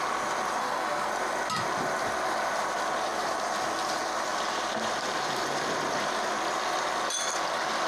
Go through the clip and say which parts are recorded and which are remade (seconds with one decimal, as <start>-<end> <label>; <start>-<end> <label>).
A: 0.0-0.6 recorded; 0.6-1.1 remade; 1.1-7.9 recorded